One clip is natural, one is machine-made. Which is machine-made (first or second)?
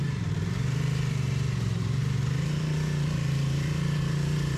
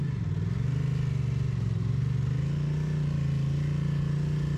first